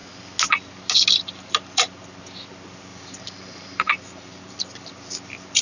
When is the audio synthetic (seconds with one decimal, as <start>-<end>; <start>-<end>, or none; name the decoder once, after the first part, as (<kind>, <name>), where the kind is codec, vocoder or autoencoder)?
2.9-4.6 (vocoder, BigVGAN v2)